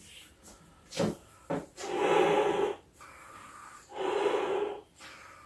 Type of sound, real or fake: real